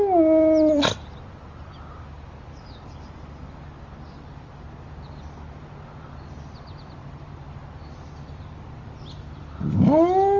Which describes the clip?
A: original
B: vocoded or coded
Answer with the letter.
A